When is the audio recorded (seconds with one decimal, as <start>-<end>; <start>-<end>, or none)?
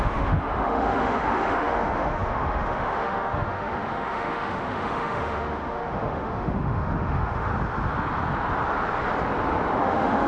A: 7.5-9.8